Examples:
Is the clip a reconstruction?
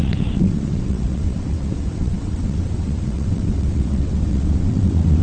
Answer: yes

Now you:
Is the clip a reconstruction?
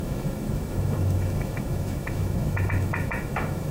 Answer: yes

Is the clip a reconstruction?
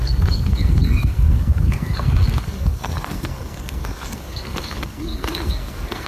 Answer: yes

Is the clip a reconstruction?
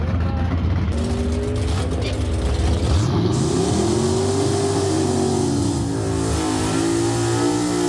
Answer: no